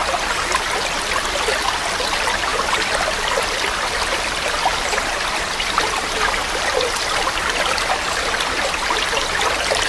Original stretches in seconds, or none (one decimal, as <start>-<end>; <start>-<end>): 0.0-2.5; 3.9-4.7; 7.6-9.9